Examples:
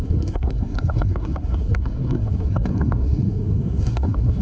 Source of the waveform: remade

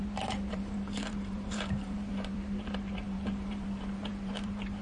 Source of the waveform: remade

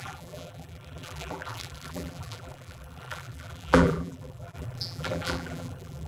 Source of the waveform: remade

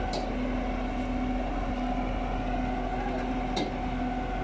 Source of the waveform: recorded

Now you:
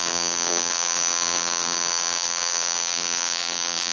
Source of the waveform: remade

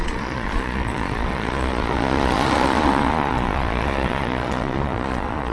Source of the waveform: remade